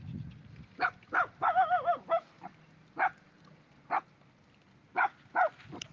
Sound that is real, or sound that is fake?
real